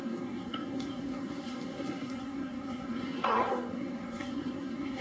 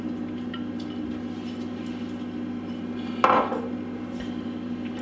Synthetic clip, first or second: first